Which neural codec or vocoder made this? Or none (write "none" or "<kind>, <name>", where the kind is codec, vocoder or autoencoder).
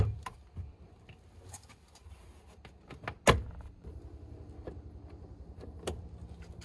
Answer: none